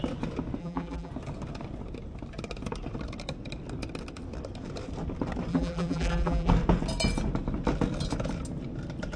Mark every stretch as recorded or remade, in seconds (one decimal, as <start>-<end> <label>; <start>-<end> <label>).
0.0-0.6 recorded; 0.6-1.1 remade; 1.1-5.5 recorded; 5.5-6.5 remade; 6.5-9.2 recorded